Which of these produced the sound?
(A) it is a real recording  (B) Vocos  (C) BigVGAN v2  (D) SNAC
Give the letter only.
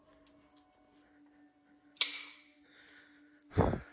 A